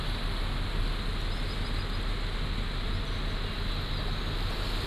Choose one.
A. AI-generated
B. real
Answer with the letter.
B